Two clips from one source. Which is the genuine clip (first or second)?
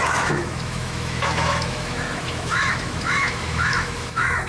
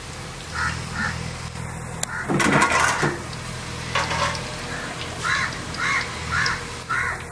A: second